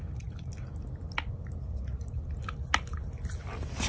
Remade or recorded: recorded